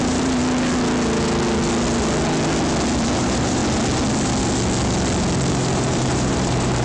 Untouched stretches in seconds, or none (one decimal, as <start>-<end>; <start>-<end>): 0.4-3.2; 3.6-5.5